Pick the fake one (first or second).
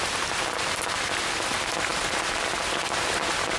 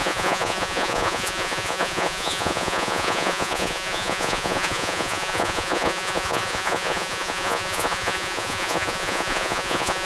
second